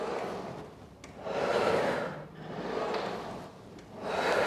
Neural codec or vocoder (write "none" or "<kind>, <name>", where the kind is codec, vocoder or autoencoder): none